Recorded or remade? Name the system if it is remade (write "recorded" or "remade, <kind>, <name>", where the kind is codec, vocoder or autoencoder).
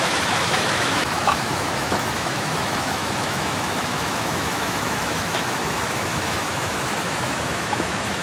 remade, autoencoder, DAC-VAE